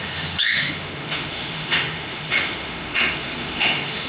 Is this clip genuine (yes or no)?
no